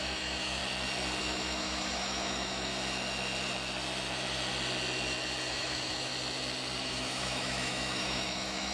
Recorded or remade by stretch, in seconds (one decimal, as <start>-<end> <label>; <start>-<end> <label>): 0.0-0.6 remade; 0.6-1.2 recorded; 1.2-2.7 remade; 2.7-5.5 recorded; 5.5-6.1 remade; 6.1-6.8 recorded; 6.8-8.7 remade